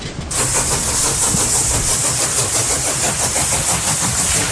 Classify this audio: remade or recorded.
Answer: recorded